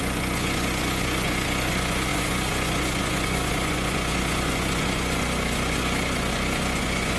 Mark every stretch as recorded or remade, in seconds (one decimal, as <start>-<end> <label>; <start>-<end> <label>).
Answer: 0.0-7.2 remade